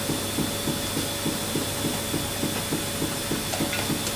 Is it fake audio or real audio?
real